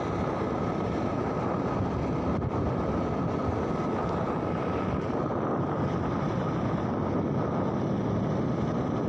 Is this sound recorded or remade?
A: recorded